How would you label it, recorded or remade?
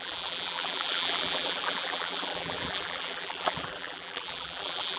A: remade